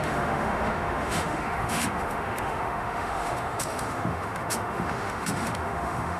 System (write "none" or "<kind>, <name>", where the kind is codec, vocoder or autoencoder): autoencoder, DAC-VAE